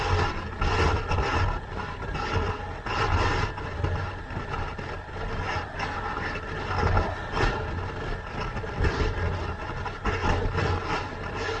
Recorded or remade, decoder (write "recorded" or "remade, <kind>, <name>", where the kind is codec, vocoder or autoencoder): recorded